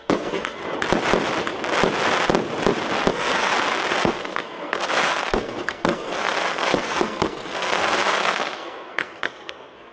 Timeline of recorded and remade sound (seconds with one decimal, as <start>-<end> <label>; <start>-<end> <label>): 0.0-0.6 remade; 0.6-3.1 recorded; 3.1-3.5 remade; 3.5-4.0 recorded; 4.0-9.9 remade